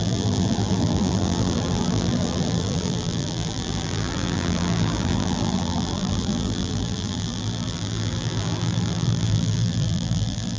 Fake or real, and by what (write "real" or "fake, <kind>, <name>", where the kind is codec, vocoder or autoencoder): fake, vocoder, BigVGAN v2